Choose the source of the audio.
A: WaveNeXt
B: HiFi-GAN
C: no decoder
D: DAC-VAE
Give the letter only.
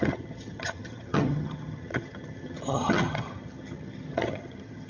B